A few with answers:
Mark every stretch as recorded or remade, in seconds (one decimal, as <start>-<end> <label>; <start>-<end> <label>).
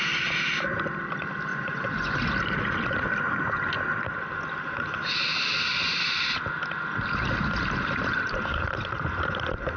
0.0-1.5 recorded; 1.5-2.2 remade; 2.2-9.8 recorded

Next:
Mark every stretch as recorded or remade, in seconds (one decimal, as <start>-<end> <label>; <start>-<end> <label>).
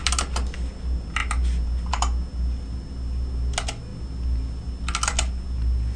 0.0-6.0 recorded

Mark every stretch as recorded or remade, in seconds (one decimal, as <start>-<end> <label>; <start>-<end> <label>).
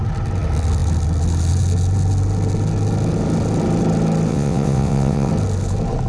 0.0-4.3 recorded; 4.3-5.3 remade; 5.3-6.1 recorded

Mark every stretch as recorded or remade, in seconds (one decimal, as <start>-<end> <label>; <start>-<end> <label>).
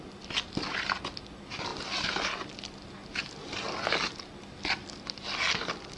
0.0-6.0 recorded